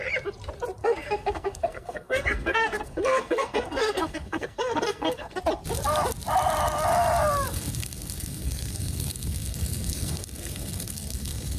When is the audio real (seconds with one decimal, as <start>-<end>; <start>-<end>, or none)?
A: 0.0-0.8; 5.4-7.5